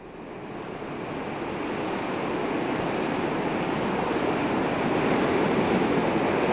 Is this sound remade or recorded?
recorded